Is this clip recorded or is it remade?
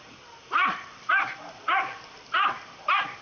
recorded